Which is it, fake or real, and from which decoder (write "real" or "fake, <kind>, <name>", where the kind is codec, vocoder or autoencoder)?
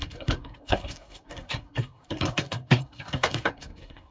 fake, codec, SNAC